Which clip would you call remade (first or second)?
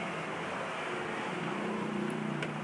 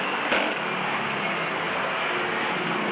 first